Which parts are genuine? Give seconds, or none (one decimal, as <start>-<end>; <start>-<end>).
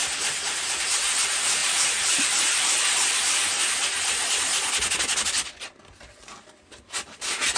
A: 0.0-7.6